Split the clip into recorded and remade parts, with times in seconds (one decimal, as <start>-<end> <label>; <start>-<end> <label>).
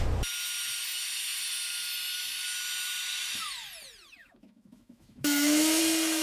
0.0-4.2 recorded; 4.2-5.8 remade; 5.8-6.2 recorded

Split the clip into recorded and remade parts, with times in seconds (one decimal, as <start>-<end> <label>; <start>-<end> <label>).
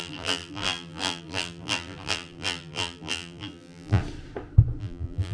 0.0-4.0 remade; 4.0-4.8 recorded; 4.8-5.3 remade